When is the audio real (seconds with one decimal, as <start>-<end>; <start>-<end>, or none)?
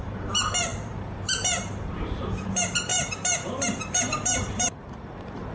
none